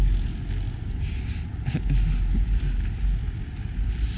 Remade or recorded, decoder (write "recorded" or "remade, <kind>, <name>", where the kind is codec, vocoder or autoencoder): recorded